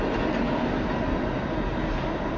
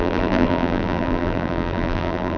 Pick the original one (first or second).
first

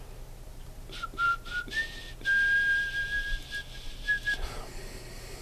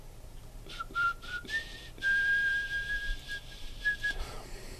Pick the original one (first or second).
first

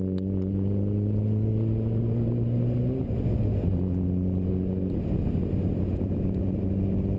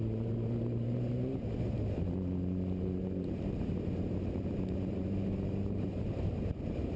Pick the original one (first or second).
first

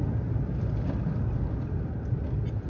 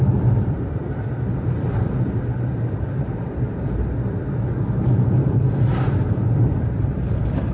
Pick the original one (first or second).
first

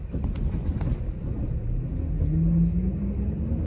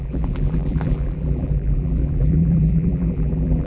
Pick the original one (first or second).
first